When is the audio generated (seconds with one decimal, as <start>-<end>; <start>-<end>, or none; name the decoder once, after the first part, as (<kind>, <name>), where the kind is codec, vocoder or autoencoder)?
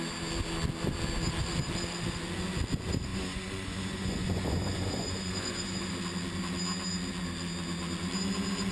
3.1-5.9 (vocoder, Vocos)